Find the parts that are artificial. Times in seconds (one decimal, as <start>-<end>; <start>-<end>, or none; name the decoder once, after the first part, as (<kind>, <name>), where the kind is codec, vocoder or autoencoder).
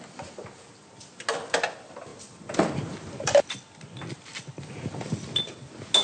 none